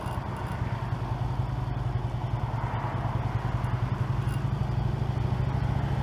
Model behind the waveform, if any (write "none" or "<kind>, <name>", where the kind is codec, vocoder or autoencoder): none